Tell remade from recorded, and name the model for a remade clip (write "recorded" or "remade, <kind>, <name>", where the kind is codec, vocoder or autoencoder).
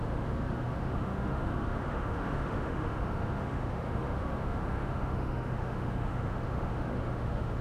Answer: remade, autoencoder, DAC-VAE